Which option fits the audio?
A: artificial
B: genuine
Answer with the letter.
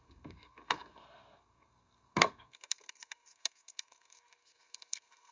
A